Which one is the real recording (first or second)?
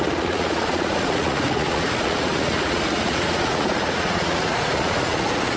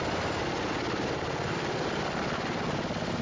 second